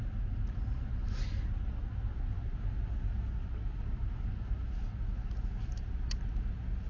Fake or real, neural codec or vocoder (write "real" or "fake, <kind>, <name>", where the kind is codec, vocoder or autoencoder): real